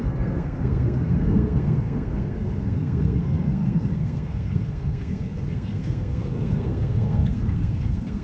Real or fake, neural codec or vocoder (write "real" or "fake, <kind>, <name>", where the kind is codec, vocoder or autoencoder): fake, codec, SNAC